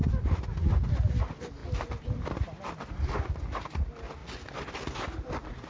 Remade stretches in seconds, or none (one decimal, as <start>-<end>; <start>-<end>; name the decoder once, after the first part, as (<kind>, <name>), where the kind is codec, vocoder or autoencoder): 1.6-3.3 (vocoder, BigVGAN v2)